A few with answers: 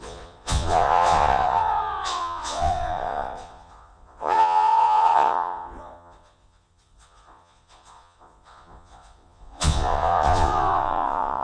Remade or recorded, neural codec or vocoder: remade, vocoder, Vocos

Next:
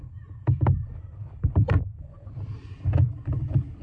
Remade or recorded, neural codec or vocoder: remade, vocoder, BigVGAN v2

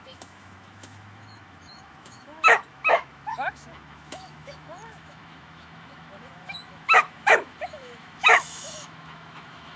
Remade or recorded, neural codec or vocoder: remade, autoencoder, DAC-VAE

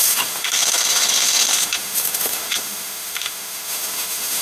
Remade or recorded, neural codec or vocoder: remade, autoencoder, DAC-VAE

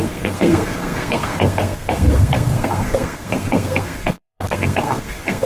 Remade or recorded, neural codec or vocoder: remade, codec, SNAC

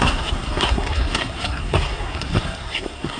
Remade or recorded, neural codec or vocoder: remade, codec, SNAC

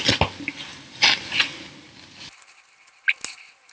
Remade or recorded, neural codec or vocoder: recorded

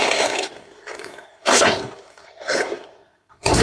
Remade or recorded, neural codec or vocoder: remade, codec, SNAC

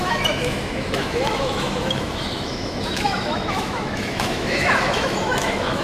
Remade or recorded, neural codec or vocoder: remade, autoencoder, DAC-VAE